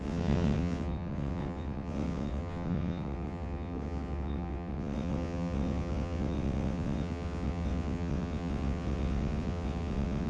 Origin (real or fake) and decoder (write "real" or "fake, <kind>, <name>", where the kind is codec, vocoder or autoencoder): fake, vocoder, WaveNeXt